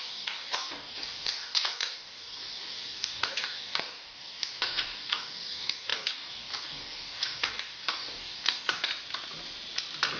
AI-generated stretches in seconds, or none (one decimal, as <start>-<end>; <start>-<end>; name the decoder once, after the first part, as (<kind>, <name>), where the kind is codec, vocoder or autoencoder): 0.0-8.9 (codec, DAC)